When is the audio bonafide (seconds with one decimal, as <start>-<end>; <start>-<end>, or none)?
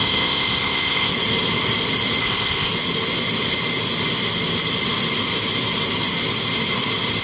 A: 1.1-2.2; 2.7-7.2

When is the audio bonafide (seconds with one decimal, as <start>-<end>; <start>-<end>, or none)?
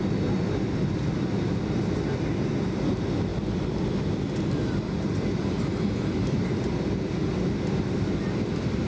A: 0.0-8.9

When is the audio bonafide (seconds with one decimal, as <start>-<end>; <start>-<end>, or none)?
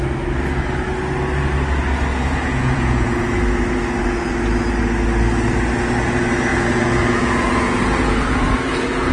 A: 0.0-2.1; 3.3-6.5